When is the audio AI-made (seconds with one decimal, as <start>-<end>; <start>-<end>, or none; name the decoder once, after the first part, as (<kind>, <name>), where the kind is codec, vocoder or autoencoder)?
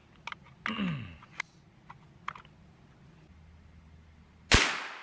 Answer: none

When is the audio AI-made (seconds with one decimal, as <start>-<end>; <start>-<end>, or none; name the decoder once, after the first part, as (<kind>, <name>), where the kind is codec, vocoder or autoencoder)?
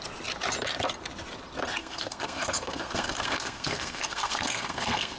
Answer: 1.8-5.2 (codec, SNAC)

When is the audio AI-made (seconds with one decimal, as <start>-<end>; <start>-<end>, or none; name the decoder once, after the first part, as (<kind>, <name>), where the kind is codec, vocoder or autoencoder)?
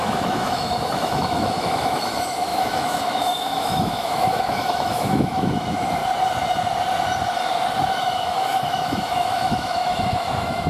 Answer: 0.0-6.0 (autoencoder, DAC-VAE); 7.9-10.7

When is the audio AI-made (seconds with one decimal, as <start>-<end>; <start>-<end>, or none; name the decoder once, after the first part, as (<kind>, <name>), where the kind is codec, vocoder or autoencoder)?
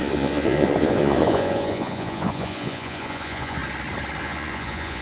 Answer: 0.0-3.6 (vocoder, Vocos); 4.2-5.0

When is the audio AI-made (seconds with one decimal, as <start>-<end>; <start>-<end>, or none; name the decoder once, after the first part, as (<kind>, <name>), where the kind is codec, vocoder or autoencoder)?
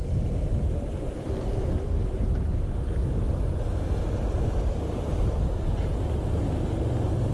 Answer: none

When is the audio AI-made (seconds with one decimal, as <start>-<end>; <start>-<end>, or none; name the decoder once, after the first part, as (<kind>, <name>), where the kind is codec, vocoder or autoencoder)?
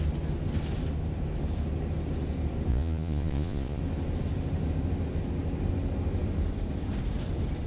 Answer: 2.7-3.8 (vocoder, Vocos)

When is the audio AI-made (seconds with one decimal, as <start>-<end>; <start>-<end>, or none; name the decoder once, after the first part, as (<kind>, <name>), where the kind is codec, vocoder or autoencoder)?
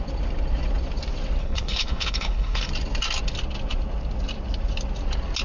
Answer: 1.4-2.7 (codec, HILCodec)